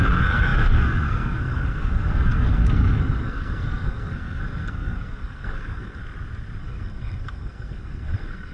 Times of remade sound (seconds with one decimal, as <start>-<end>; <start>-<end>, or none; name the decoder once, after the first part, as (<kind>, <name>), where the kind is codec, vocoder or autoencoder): 0.0-6.0 (codec, SNAC); 6.6-8.5